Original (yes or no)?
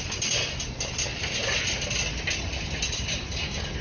yes